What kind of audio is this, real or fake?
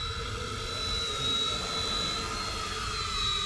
real